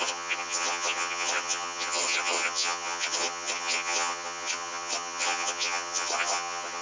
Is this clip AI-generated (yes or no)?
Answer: yes